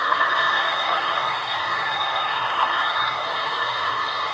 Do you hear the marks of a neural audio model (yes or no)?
yes